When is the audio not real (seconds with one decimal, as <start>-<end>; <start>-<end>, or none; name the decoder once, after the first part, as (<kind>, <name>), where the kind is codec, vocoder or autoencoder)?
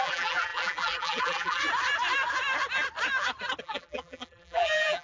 0.0-1.6 (vocoder, BigVGAN v2); 3.6-5.0